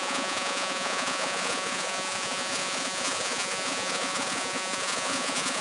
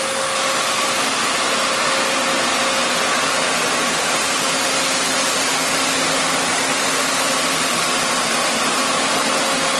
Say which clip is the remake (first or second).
first